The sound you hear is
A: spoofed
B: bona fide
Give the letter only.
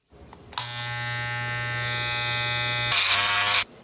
B